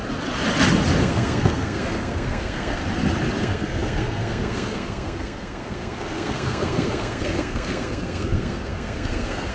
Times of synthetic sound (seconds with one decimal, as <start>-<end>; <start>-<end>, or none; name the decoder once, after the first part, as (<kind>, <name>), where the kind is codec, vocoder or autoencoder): 1.0-2.8 (codec, SNAC); 3.4-9.5